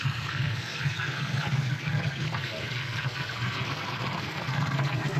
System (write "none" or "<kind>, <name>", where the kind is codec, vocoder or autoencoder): codec, SNAC